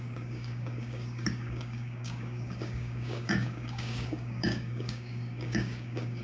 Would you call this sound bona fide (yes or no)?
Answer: no